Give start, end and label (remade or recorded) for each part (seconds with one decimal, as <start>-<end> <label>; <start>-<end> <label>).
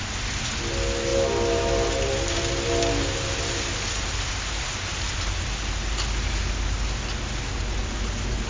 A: 0.0-8.5 recorded